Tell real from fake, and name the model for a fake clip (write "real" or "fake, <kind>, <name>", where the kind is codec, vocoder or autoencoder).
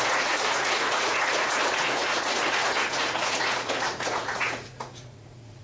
fake, vocoder, Vocos